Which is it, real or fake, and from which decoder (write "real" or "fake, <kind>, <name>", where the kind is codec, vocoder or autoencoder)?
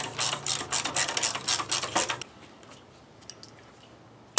real